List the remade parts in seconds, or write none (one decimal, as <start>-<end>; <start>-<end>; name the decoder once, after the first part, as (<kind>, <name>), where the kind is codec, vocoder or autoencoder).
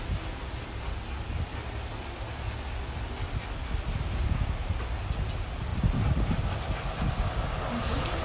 none